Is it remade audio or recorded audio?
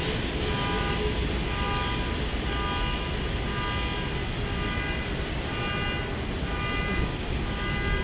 recorded